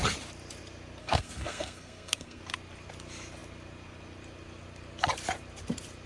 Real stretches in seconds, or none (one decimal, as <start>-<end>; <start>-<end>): 0.0-1.0; 2.4-6.1

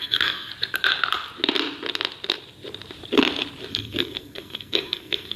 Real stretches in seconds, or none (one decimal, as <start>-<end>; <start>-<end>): 0.5-3.7

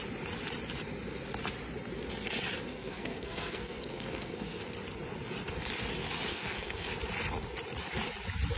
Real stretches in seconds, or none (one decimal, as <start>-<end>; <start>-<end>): 0.0-2.7; 4.6-6.3; 6.9-8.6

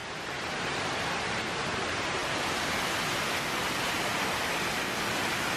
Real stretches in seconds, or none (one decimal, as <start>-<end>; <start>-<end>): 0.0-5.6

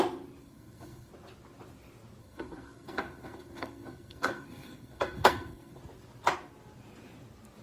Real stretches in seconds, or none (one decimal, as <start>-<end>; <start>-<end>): 0.0-0.4; 1.1-2.2; 5.8-7.6